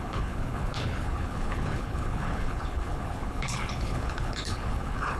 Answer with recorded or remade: remade